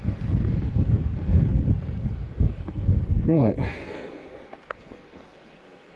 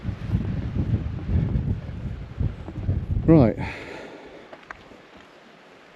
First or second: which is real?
second